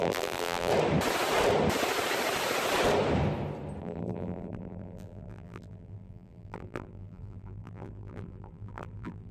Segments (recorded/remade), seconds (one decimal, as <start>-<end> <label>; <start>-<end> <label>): 0.0-0.7 remade; 0.7-3.8 recorded; 3.8-9.3 remade